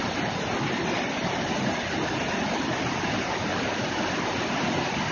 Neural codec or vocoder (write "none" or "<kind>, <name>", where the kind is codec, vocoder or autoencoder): none